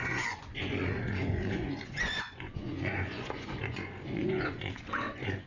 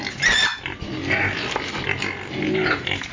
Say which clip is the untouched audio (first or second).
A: second